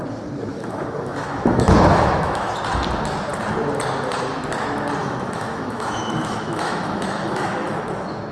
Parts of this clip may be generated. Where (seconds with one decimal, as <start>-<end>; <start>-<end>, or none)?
0.5-2.5; 5.0-7.8